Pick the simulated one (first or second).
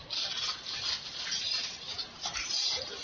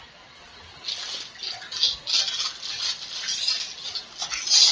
first